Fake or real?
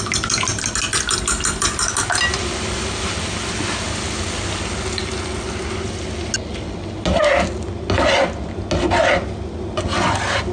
real